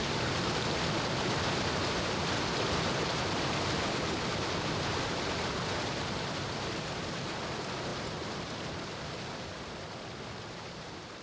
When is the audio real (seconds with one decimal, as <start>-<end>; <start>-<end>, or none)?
0.0-11.2